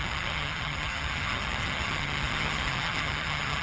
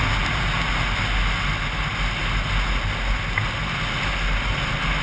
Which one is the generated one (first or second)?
first